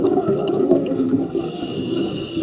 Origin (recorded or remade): remade